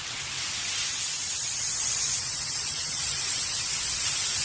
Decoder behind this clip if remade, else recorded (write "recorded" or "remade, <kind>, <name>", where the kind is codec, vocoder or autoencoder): remade, vocoder, WaveNeXt